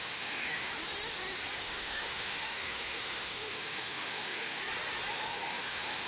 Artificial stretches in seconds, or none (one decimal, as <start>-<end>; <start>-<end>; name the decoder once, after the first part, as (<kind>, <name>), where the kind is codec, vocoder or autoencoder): 0.0-0.7 (autoencoder, DAC-VAE); 1.6-4.6; 5.1-6.1